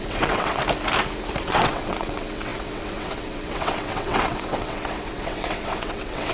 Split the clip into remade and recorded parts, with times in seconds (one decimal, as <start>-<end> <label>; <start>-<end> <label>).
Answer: 0.0-0.6 remade; 0.6-1.4 recorded; 1.4-6.3 remade